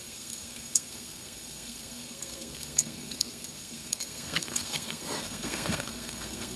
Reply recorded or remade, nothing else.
remade